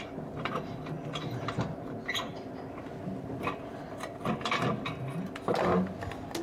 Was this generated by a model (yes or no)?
no